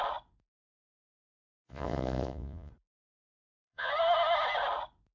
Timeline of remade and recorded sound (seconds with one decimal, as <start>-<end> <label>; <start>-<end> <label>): 0.0-1.0 recorded; 1.0-2.7 remade; 2.7-3.4 recorded; 3.4-3.9 remade; 3.9-5.1 recorded